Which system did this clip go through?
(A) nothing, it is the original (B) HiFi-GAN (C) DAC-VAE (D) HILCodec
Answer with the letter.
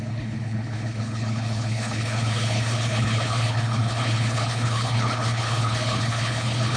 D